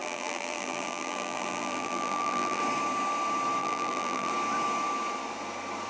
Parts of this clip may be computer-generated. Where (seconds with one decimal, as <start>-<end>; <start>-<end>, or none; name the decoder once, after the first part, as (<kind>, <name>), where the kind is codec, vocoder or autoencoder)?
0.0-2.6 (vocoder, BigVGAN v2); 3.6-4.3